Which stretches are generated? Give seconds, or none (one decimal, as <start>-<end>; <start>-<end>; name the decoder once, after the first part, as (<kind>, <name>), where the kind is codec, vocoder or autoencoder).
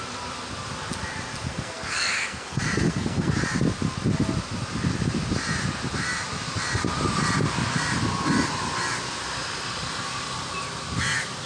1.5-3.3 (codec, SNAC)